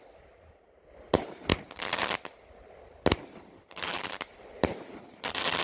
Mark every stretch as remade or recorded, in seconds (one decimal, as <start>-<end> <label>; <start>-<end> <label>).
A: 0.0-5.6 recorded